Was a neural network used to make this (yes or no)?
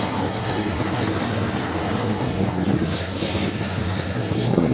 yes